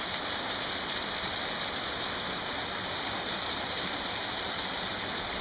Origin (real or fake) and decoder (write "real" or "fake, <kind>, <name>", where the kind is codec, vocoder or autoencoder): real